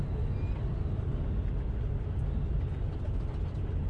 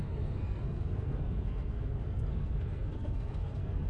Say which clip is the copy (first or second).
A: second